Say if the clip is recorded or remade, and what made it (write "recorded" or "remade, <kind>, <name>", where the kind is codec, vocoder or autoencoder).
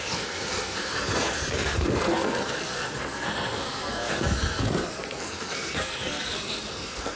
remade, codec, SNAC